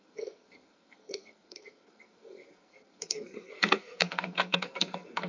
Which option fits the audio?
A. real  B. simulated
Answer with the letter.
B